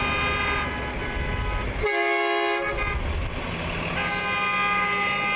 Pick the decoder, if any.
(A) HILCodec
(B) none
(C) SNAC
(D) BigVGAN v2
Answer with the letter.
B